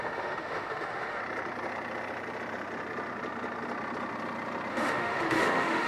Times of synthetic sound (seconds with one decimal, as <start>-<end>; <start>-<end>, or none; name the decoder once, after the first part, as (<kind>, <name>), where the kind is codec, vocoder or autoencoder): 0.0-1.2 (autoencoder, DAC-VAE); 4.7-5.9